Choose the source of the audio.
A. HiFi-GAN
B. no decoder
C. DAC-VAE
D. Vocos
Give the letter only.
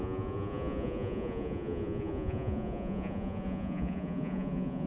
D